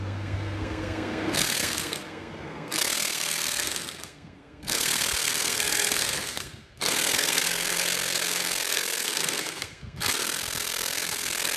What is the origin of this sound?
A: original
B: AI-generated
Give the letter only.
B